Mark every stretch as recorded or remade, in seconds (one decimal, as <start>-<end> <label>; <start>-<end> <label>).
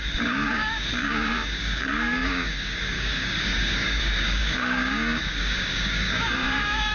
0.0-6.9 remade